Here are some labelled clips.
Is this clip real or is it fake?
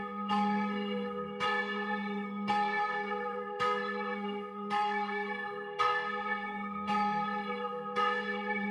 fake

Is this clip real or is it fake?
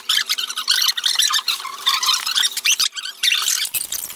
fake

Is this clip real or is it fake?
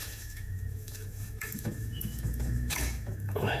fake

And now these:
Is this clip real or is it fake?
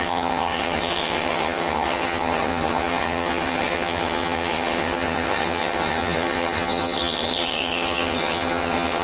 fake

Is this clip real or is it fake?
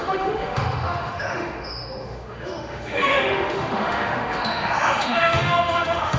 fake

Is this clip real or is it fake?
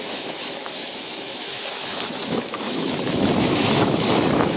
fake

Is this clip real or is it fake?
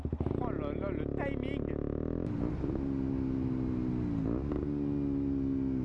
real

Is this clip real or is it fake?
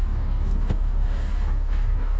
fake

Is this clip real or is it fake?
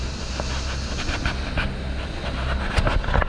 real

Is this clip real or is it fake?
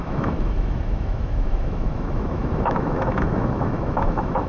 fake